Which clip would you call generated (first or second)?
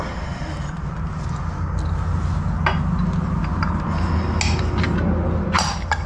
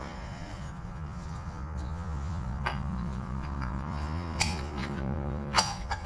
second